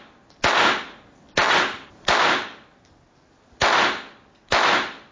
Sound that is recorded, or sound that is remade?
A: recorded